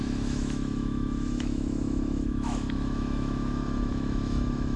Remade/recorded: remade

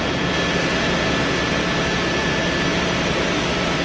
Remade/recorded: recorded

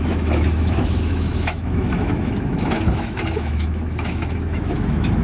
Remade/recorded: remade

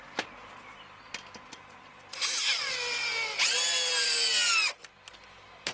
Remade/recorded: recorded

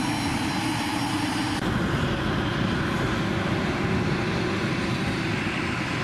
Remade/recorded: recorded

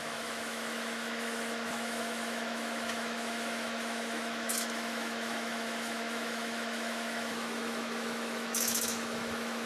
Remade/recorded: remade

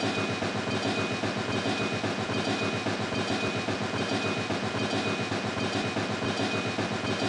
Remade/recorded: recorded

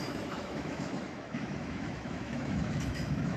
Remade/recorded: remade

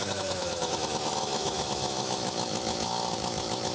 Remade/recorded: remade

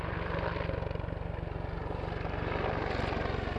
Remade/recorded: recorded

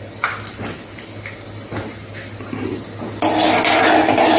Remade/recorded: recorded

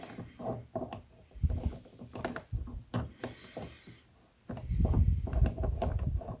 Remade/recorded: recorded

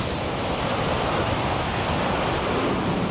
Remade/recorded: recorded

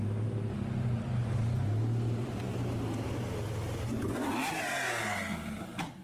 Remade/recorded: recorded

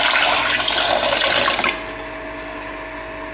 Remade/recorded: recorded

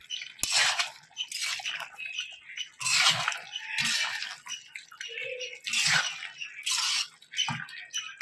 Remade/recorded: recorded